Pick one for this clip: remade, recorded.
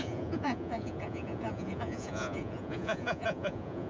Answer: remade